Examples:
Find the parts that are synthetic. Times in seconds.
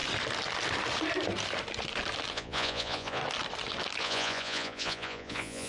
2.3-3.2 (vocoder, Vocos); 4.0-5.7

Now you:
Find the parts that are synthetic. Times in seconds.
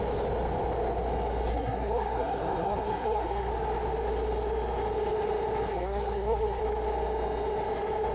1.5-3.5 (codec, SNAC); 5.7-6.6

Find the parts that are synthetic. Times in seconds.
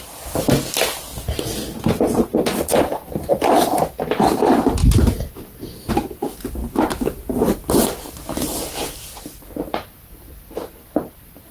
none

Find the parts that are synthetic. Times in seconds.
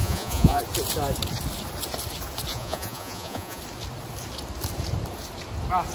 0.0-0.6 (vocoder, Vocos); 2.5-3.6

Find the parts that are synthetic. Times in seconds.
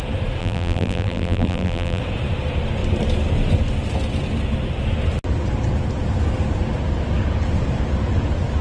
0.4-2.0 (vocoder, BigVGAN v2)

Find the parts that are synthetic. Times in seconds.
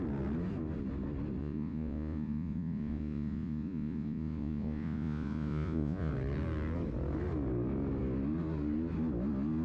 1.4-6.1 (vocoder, Vocos)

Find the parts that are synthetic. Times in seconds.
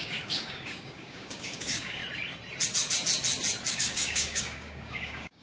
0.0-2.0 (codec, DAC); 3.7-5.4